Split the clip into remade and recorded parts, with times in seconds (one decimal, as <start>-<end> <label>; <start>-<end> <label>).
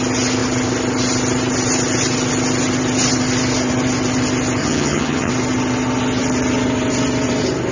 0.0-4.6 recorded; 4.6-5.3 remade; 5.3-7.7 recorded